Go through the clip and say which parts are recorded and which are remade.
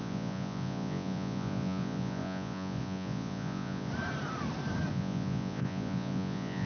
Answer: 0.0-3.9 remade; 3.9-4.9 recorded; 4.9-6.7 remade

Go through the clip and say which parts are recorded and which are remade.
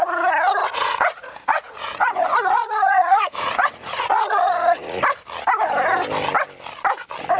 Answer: 0.0-0.6 recorded; 0.6-5.0 remade; 5.0-7.4 recorded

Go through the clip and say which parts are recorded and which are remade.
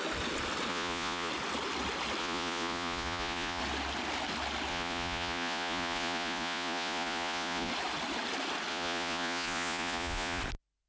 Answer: 0.0-0.7 recorded; 0.7-1.3 remade; 1.3-2.2 recorded; 2.2-3.6 remade; 3.6-4.7 recorded; 4.7-7.7 remade; 7.7-8.7 recorded; 8.7-10.4 remade; 10.4-10.9 recorded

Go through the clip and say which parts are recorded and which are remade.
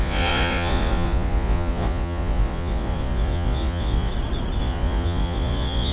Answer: 0.0-4.1 remade; 4.1-4.6 recorded; 4.6-5.9 remade